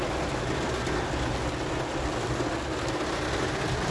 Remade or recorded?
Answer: recorded